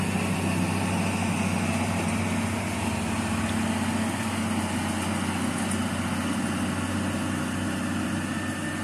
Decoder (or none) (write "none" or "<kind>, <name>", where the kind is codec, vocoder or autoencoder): none